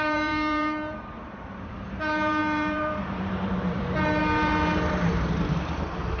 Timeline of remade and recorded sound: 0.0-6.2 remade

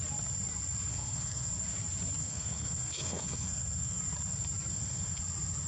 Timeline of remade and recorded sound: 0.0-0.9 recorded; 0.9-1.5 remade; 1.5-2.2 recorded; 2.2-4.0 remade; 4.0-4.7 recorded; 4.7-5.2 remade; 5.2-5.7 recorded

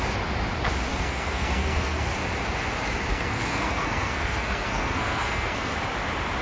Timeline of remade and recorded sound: 0.0-0.9 recorded; 0.9-2.1 remade; 2.1-3.1 recorded; 3.1-5.7 remade; 5.7-6.4 recorded